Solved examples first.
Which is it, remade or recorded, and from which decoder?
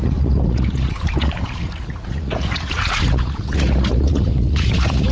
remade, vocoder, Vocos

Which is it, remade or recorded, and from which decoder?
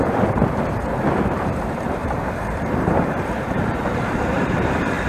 remade, vocoder, BigVGAN v2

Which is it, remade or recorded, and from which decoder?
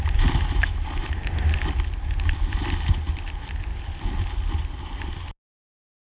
recorded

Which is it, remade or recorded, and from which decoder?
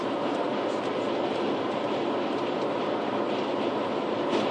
recorded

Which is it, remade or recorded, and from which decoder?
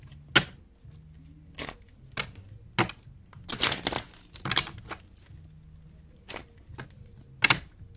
recorded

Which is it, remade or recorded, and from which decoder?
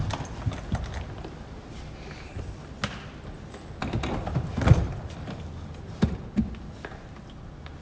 recorded